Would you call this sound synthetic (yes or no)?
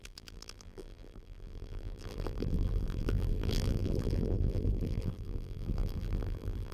yes